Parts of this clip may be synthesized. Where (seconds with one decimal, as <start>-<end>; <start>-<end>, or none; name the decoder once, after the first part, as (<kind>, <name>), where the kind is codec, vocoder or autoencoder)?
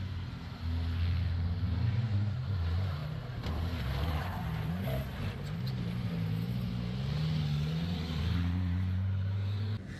none